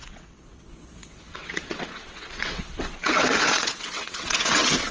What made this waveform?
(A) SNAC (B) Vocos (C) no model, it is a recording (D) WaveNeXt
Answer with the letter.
D